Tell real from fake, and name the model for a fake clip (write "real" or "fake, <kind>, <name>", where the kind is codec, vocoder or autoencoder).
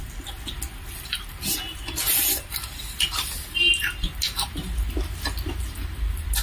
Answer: real